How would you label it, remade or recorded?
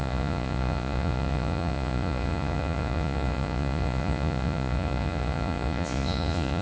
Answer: remade